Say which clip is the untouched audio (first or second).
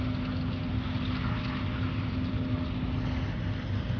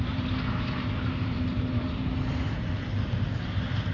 first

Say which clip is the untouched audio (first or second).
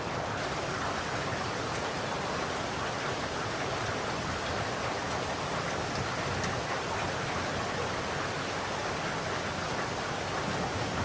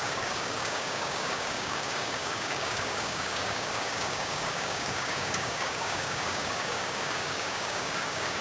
first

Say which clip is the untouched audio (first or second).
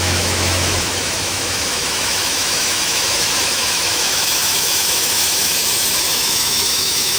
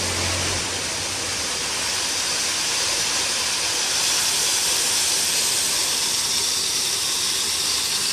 second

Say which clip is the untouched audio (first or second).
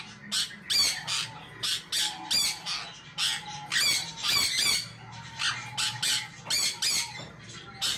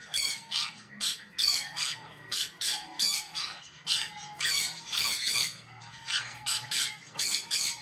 first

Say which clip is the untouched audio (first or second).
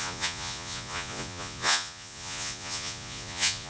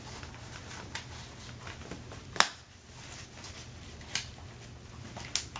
second